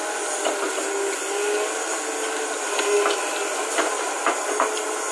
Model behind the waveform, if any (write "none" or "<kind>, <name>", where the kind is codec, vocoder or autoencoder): none